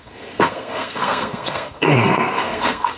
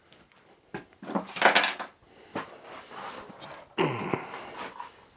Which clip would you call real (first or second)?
second